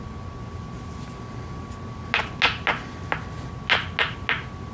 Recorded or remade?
recorded